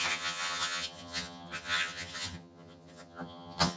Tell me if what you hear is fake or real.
fake